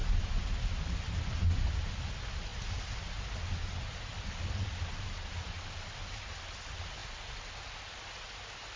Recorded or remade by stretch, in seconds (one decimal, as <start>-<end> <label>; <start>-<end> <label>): 0.0-8.8 recorded